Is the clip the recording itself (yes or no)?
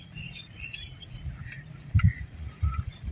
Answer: no